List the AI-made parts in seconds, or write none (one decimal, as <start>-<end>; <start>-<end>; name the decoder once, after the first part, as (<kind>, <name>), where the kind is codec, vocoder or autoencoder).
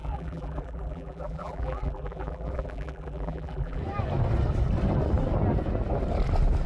0.0-3.8 (vocoder, BigVGAN v2)